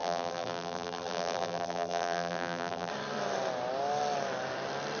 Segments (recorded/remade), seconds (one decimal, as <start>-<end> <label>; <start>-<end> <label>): 0.0-2.9 remade; 2.9-5.0 recorded